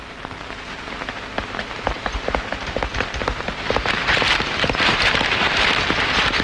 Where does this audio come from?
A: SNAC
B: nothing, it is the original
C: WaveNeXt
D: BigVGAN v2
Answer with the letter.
D